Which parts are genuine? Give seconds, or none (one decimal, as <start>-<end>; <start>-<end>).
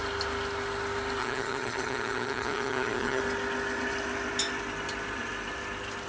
0.0-1.2; 3.2-6.1